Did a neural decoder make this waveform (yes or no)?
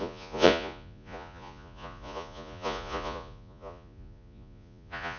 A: yes